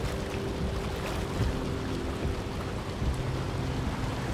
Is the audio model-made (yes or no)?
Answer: no